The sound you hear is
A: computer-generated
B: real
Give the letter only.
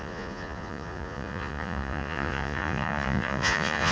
A